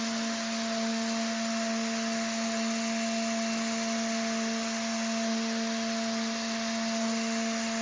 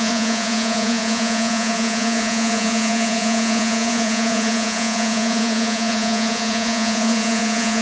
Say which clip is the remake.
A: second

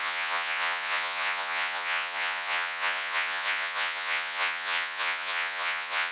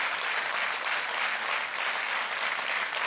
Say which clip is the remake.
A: first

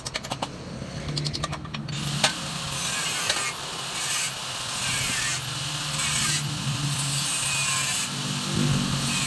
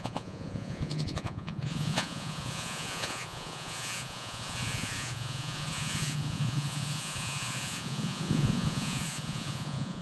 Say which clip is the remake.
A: second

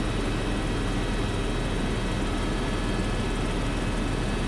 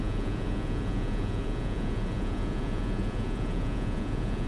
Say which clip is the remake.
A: second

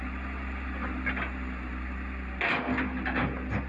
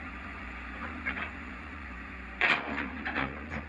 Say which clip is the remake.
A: second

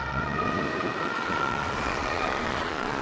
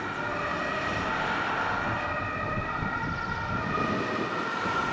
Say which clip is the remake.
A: first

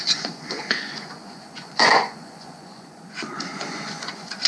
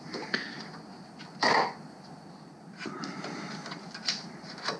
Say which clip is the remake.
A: first